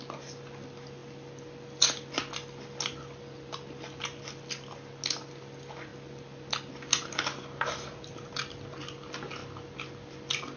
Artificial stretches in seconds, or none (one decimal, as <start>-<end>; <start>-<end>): none